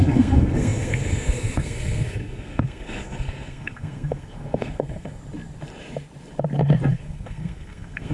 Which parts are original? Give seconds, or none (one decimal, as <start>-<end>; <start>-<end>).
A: 5.2-6.9

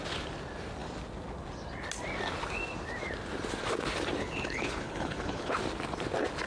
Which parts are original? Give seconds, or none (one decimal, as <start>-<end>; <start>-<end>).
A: 0.0-4.2; 5.5-6.5

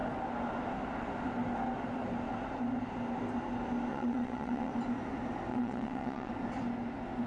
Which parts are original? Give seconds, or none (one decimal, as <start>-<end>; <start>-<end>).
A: 0.0-3.9; 4.7-5.5; 6.3-7.3

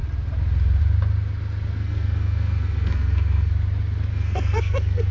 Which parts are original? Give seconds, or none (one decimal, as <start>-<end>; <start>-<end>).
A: 0.0-1.8; 3.5-4.1

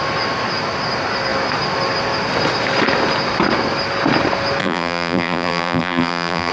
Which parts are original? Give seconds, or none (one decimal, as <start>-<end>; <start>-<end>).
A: 0.0-4.6

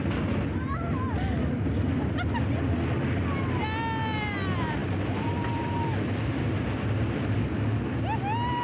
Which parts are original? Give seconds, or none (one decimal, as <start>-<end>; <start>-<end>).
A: 0.0-4.8; 7.4-8.6

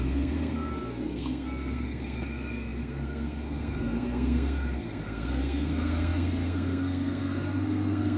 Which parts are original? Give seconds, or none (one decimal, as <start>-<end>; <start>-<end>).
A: none